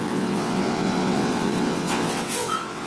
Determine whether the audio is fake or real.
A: fake